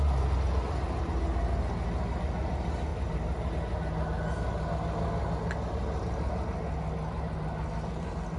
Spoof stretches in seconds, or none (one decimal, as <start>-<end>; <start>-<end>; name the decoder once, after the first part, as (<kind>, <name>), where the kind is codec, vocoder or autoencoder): 2.9-3.5 (vocoder, BigVGAN v2)